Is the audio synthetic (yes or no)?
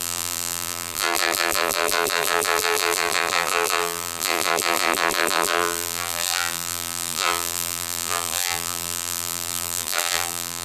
yes